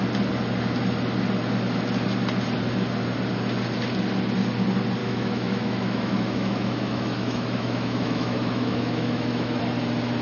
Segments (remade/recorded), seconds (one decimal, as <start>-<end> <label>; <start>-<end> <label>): 0.0-5.0 recorded; 5.0-9.6 remade; 9.6-10.2 recorded